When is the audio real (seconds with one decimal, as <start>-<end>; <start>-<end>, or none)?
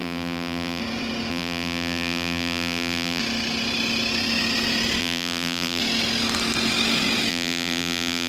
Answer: 0.8-1.3; 3.2-5.0; 5.8-7.3